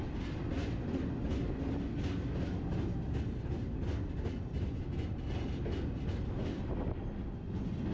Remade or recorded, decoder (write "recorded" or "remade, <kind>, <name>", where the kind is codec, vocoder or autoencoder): recorded